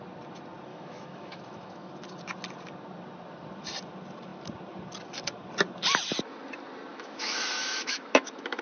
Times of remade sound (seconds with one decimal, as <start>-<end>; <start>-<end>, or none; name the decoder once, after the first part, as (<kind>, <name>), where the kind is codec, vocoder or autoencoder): 0.7-1.9 (autoencoder, DAC-VAE); 6.9-8.6